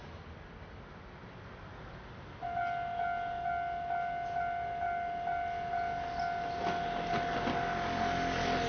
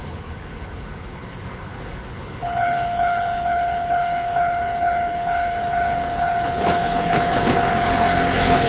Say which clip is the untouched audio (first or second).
first